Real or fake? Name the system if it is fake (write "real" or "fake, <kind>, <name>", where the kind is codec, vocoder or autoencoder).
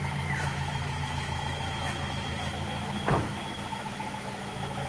fake, autoencoder, DAC-VAE